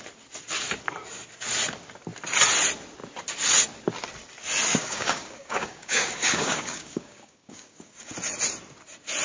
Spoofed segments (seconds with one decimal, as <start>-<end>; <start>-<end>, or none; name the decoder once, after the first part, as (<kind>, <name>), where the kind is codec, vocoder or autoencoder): 4.7-8.1 (codec, DAC)